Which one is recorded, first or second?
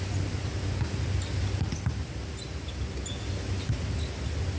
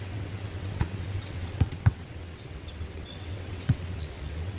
first